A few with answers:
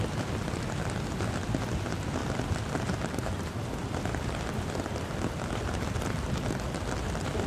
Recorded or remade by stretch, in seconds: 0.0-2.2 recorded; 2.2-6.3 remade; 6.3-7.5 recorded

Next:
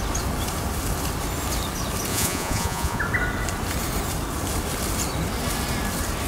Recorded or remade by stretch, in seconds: 0.0-2.1 recorded; 2.1-3.0 remade; 3.0-6.3 recorded

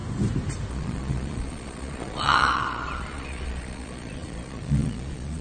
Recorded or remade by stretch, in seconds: 0.0-0.7 recorded; 0.7-5.4 remade

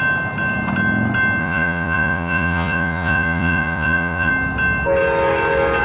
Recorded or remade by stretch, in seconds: 0.0-1.4 recorded; 1.4-4.3 remade; 4.3-5.8 recorded

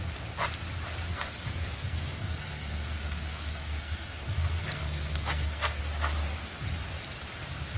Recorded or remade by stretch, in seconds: 0.0-1.1 recorded; 1.1-5.8 remade; 5.8-7.8 recorded

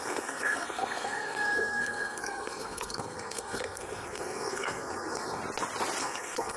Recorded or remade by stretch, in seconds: 0.0-5.4 remade; 5.4-6.0 recorded; 6.0-6.6 remade

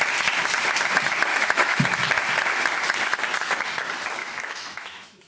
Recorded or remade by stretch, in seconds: 0.0-1.3 recorded; 1.3-1.8 remade; 1.8-4.2 recorded; 4.2-5.3 remade